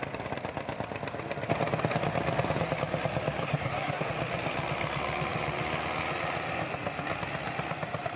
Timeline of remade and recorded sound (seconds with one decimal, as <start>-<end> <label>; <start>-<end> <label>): 0.0-3.4 recorded; 3.4-4.1 remade; 4.1-8.2 recorded